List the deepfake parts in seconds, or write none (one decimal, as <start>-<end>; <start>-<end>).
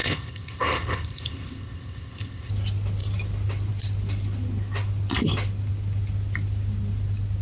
0.0-2.5